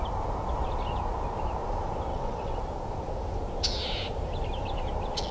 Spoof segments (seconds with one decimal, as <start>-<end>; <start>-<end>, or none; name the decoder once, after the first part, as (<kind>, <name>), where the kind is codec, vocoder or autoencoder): 2.1-2.6 (vocoder, WaveNeXt)